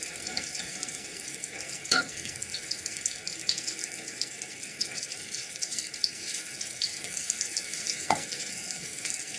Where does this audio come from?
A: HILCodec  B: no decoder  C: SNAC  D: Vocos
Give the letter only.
C